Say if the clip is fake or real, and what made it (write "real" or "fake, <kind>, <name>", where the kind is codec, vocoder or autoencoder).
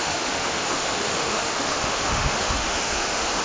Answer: fake, autoencoder, DAC-VAE